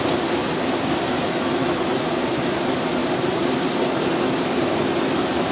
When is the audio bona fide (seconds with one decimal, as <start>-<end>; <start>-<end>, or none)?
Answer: 0.0-0.4; 2.0-3.0; 4.2-5.5

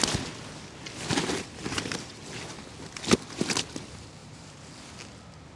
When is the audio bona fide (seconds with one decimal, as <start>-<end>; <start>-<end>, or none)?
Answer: 0.0-1.1; 2.2-4.2; 4.7-5.6

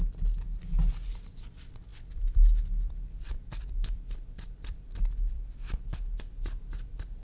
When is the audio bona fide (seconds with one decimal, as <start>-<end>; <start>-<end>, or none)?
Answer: 0.0-1.9; 6.2-7.2

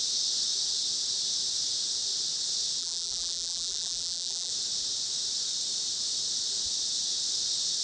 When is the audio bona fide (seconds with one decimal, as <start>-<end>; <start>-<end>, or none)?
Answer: 0.0-2.8; 4.5-7.8